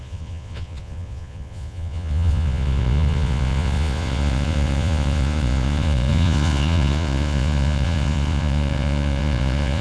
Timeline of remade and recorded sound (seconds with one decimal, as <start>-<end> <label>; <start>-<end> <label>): 0.0-9.8 remade